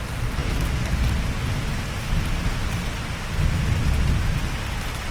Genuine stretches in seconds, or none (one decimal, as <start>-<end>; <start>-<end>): 0.0-5.1